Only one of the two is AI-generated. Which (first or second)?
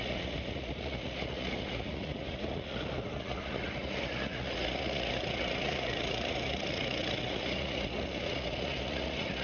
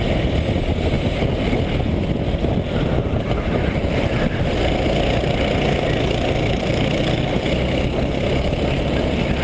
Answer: first